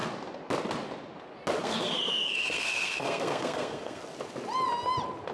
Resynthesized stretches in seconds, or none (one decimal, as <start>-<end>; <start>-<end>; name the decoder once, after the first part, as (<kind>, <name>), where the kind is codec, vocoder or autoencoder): 1.6-4.0 (codec, SNAC)